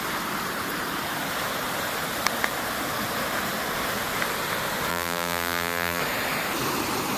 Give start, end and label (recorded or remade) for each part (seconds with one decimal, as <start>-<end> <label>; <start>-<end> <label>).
0.0-4.9 recorded; 4.9-6.0 remade; 6.0-7.2 recorded